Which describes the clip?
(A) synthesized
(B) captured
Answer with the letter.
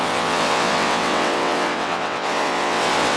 A